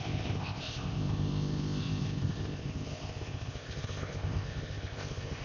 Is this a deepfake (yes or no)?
yes